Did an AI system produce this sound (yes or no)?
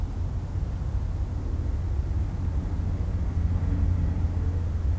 no